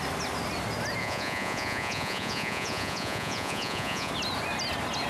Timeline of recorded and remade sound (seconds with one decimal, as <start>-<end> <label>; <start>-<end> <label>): 0.0-1.0 recorded; 1.0-4.1 remade; 4.1-5.1 recorded